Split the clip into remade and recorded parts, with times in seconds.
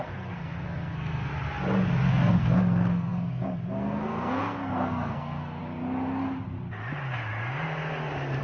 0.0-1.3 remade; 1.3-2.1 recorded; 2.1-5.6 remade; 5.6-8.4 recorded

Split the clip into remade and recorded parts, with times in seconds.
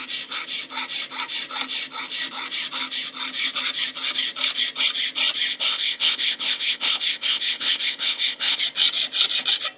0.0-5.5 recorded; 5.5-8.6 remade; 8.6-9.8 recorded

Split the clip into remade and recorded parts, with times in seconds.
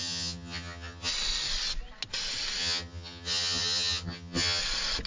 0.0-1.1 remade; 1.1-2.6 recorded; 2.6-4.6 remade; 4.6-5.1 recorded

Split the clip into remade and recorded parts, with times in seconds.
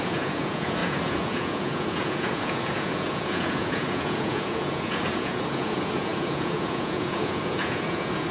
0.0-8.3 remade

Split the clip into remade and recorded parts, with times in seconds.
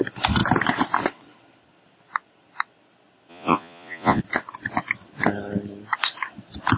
0.0-3.3 recorded; 3.3-4.2 remade; 4.2-6.8 recorded